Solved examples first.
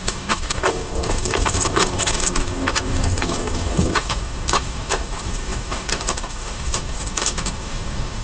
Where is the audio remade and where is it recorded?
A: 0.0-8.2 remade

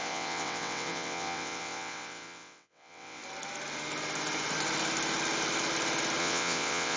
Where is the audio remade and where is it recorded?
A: 0.0-3.2 remade; 3.2-6.2 recorded; 6.2-7.0 remade